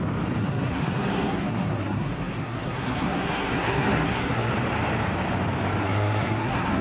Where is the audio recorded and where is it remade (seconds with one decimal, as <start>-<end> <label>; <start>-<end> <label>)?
0.0-0.4 recorded; 0.4-4.5 remade; 4.5-5.8 recorded; 5.8-6.8 remade